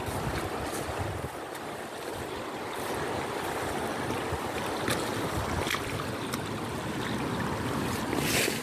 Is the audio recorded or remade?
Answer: recorded